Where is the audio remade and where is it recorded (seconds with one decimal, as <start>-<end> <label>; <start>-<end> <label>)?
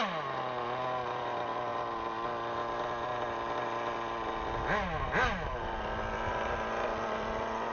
0.0-7.7 recorded